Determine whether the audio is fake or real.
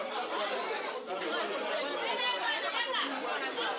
real